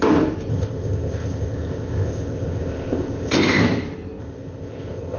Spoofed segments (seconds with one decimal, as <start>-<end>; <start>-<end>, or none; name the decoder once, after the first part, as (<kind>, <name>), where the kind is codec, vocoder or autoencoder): 0.5-3.6 (codec, ZipCodec); 4.2-5.2